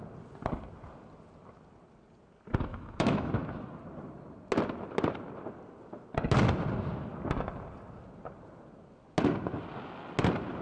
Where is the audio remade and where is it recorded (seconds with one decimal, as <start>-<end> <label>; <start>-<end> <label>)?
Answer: 0.0-2.7 recorded; 2.7-3.3 remade; 3.3-10.6 recorded